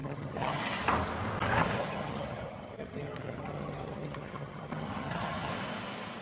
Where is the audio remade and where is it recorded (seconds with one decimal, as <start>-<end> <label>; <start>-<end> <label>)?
0.0-0.6 remade; 0.6-1.8 recorded; 1.8-5.5 remade; 5.5-6.2 recorded